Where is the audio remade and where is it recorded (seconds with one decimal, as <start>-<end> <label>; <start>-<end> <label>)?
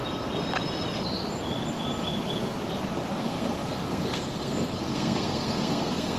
0.0-3.1 recorded; 3.1-6.2 remade